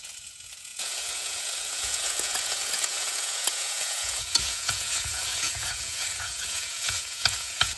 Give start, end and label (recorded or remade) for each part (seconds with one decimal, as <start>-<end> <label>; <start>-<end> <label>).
0.0-7.8 remade